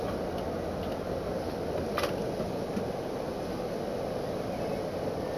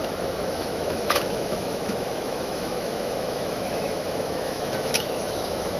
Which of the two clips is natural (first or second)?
first